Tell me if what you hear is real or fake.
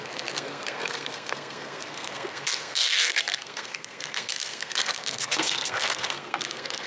fake